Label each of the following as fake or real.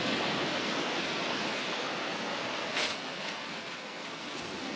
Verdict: fake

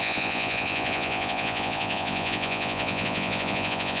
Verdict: fake